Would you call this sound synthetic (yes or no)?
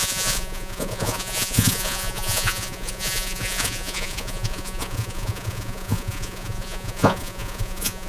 yes